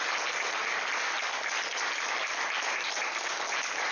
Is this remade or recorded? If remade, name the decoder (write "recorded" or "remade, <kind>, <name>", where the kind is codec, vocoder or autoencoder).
recorded